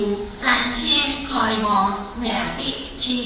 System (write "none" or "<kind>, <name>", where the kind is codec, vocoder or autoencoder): codec, SNAC